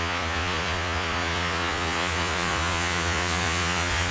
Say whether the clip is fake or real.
fake